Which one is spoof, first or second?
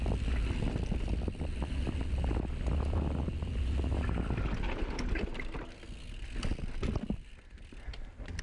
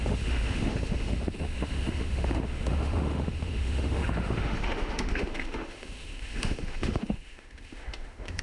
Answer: second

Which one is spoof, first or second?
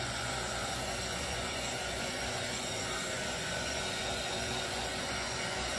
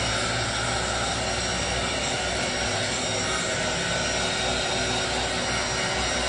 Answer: first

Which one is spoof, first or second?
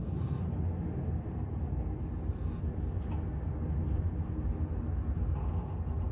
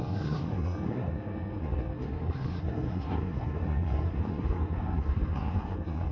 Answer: second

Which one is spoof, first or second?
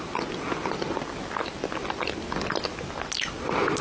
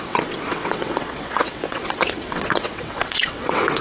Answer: second